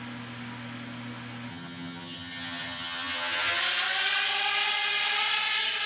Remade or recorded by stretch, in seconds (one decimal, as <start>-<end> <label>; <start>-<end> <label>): 0.0-1.5 recorded; 1.5-3.6 remade; 3.6-5.9 recorded